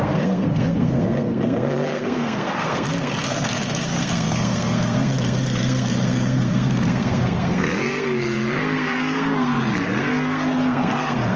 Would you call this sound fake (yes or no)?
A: yes